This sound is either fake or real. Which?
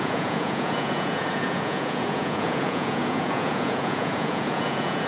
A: fake